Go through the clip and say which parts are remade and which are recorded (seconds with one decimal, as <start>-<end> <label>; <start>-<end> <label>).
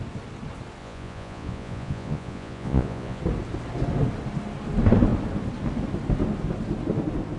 0.0-0.8 recorded; 0.8-3.2 remade; 3.2-7.4 recorded